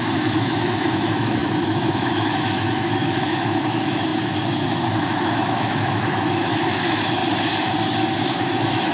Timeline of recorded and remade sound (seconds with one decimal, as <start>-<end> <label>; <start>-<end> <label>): 0.0-7.2 remade; 7.2-8.1 recorded; 8.1-8.9 remade